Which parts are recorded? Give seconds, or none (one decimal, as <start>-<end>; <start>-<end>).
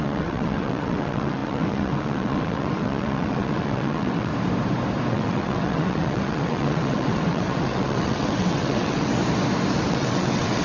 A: 4.3-5.1; 9.1-9.9